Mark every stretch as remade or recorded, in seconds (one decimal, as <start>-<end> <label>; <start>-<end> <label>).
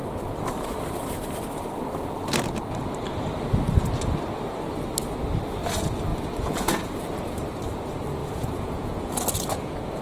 0.0-6.1 recorded; 6.1-7.3 remade; 7.3-8.2 recorded; 8.2-10.0 remade